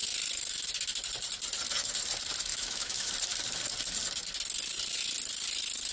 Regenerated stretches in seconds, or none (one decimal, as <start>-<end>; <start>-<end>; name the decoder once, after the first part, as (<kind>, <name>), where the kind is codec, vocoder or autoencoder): 2.5-3.1 (autoencoder, DAC-VAE)

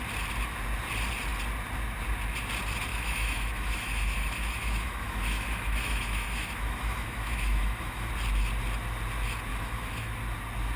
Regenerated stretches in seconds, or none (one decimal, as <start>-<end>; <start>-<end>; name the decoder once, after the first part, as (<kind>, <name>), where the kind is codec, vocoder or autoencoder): 2.9-8.1 (autoencoder, DAC-VAE); 9.5-10.1

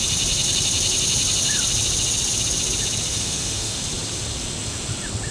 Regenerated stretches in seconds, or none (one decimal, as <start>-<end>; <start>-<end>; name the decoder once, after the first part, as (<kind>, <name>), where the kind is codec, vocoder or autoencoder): 3.1-3.8 (autoencoder, DAC-VAE)

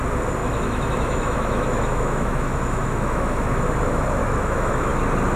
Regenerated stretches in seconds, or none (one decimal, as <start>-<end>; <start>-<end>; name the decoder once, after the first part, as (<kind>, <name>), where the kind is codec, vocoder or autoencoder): 0.4-3.6 (autoencoder, DAC-VAE); 4.2-4.9

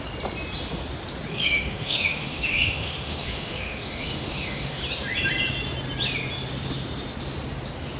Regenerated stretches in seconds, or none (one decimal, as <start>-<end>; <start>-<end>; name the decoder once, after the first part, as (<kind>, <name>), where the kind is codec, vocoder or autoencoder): 1.3-4.8 (autoencoder, DAC-VAE)

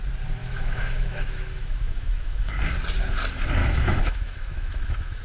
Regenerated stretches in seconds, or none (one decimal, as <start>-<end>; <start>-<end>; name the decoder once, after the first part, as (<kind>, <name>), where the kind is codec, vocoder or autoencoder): 0.4-2.5 (autoencoder, DAC-VAE); 3.6-5.2

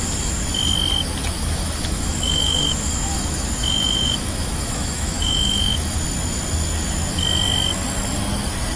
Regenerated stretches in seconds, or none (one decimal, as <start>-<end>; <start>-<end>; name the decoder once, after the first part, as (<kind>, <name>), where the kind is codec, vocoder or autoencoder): 1.4-6.0 (autoencoder, DAC-VAE)